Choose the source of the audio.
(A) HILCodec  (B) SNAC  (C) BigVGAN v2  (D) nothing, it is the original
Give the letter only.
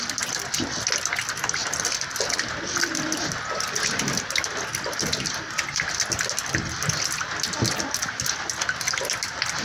D